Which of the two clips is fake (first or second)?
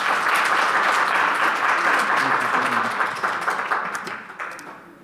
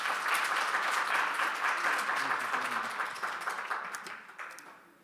second